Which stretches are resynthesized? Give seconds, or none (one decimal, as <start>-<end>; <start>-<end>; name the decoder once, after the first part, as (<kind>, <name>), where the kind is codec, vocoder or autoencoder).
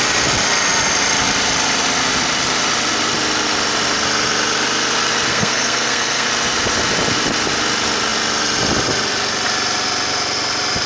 5.3-6.3 (codec, SNAC)